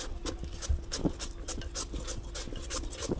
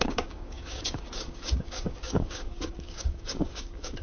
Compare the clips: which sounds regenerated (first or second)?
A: second